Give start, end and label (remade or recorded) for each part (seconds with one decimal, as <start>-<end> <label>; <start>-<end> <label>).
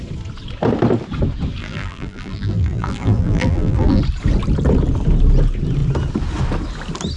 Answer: 0.0-1.6 recorded; 1.6-4.0 remade; 4.0-7.2 recorded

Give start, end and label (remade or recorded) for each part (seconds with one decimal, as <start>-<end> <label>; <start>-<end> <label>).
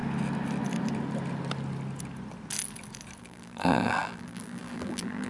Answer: 0.0-3.2 recorded; 3.2-5.3 remade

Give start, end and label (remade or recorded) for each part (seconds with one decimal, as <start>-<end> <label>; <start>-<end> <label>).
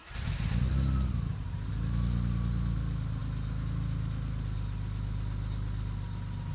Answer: 0.0-6.5 recorded